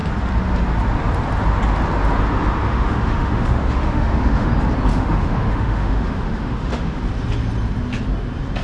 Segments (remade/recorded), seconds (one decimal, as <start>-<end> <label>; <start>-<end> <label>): 0.0-2.6 recorded; 2.6-4.5 remade; 4.5-4.9 recorded; 4.9-7.0 remade; 7.0-8.6 recorded